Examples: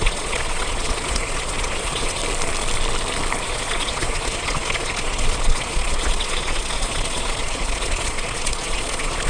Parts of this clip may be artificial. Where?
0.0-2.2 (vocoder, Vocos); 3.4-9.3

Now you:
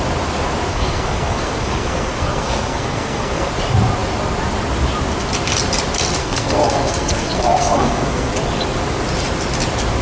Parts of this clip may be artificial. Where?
0.7-3.5 (codec, SNAC); 6.2-8.3

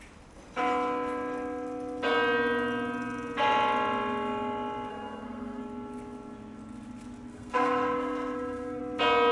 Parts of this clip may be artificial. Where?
4.9-5.6 (codec, SNAC); 7.3-8.8

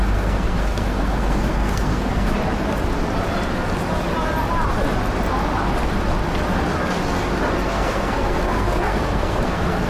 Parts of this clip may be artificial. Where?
0.0-2.3 (codec, SNAC); 7.5-9.9

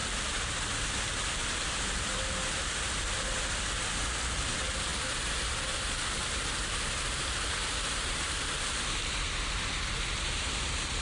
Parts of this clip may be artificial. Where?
none

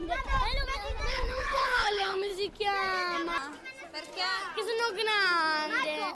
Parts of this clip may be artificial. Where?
1.1-2.3 (codec, HILCodec)

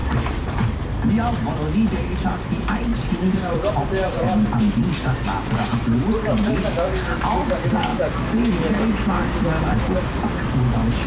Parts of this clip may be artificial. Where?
0.0-0.8 (vocoder, BigVGAN v2); 2.9-4.6; 5.7-6.6